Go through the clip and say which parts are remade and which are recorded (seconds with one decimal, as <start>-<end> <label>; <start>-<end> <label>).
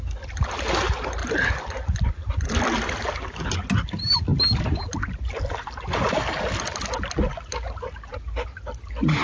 0.0-4.3 recorded; 4.3-5.0 remade; 5.0-9.2 recorded